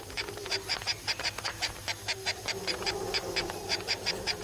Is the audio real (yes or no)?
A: no